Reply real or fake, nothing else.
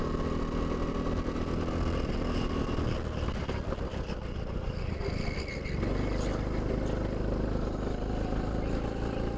real